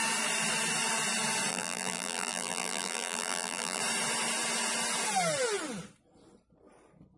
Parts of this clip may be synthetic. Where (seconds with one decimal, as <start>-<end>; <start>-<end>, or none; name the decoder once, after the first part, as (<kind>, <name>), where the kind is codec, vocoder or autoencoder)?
1.5-3.8 (vocoder, BigVGAN v2)